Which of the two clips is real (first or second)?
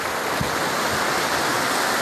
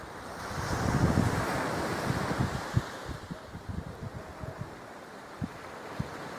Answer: first